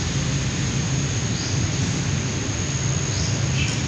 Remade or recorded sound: recorded